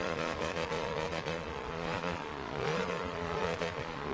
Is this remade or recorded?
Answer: remade